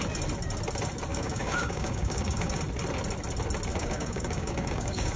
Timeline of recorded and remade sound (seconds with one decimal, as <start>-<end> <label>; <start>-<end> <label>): 0.0-1.1 recorded; 1.1-2.6 remade; 2.6-3.7 recorded; 3.7-5.2 remade